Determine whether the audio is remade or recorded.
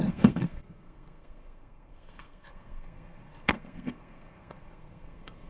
remade